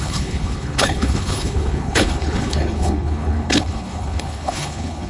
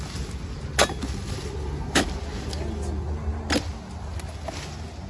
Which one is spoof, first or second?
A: first